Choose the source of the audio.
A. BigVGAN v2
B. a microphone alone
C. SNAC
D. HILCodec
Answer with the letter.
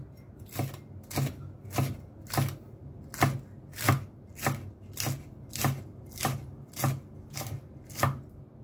B